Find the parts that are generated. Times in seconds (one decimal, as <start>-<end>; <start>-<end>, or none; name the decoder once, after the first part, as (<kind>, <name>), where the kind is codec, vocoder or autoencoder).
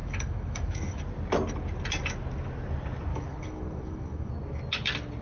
0.0-1.0 (autoencoder, DAC-VAE); 3.1-4.3